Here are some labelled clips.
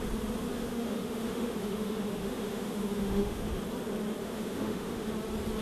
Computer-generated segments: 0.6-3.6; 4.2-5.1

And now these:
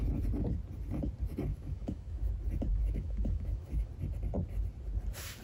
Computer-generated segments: 1.5-2.3; 2.7-3.9

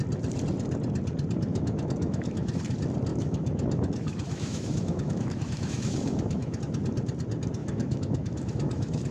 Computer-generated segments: 1.5-2.6; 3.1-6.6; 7.6-9.1

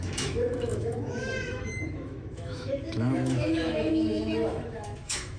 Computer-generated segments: 0.0-5.4

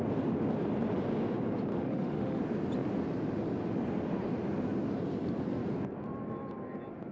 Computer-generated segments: 1.7-2.4

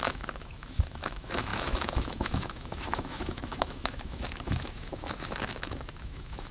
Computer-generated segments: 0.0-6.5